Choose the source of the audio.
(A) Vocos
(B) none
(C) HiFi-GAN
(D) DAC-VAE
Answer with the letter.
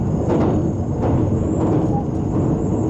B